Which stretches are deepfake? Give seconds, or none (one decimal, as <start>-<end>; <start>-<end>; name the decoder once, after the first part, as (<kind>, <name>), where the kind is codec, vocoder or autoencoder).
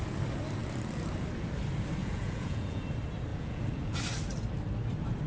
2.0-2.8 (vocoder, Vocos); 3.3-4.0